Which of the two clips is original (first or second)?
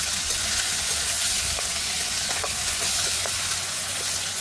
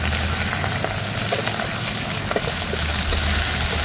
second